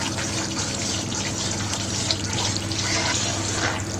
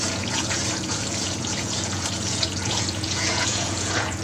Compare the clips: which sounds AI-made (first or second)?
second